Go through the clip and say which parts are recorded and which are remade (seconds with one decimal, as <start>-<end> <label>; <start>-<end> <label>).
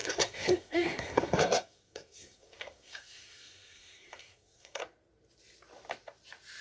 0.0-4.8 remade; 4.8-6.6 recorded